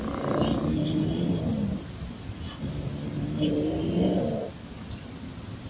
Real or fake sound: real